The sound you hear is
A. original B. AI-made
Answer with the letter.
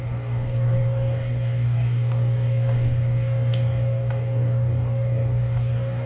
B